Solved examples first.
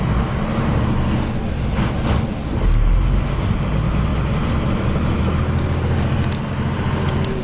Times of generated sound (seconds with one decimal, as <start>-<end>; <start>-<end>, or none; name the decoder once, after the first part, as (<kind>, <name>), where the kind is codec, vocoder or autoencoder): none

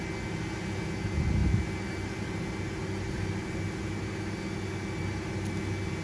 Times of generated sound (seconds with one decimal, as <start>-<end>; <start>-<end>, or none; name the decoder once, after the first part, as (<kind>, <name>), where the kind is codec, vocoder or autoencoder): none

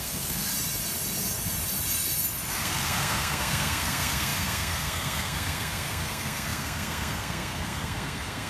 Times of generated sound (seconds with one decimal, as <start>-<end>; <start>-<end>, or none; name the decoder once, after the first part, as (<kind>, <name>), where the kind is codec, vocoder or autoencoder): 0.0-0.5 (codec, SNAC); 2.5-8.5